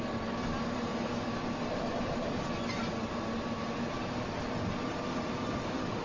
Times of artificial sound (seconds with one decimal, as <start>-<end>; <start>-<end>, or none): none